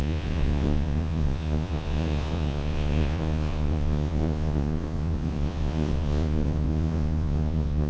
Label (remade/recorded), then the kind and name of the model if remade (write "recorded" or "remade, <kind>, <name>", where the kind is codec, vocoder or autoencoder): remade, vocoder, Vocos